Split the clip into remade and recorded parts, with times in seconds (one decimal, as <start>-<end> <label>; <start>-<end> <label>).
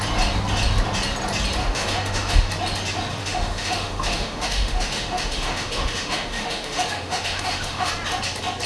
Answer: 0.0-1.6 recorded; 1.6-2.5 remade; 2.5-3.2 recorded; 3.2-7.9 remade; 7.9-8.7 recorded